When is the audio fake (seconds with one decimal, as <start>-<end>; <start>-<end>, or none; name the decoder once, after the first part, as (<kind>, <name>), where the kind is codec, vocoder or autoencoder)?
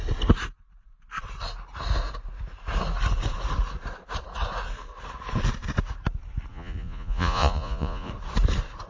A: 6.5-8.1 (vocoder, Vocos)